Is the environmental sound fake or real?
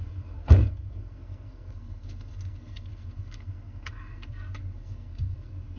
fake